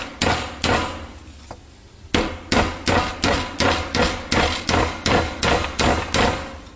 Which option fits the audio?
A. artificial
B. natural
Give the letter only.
B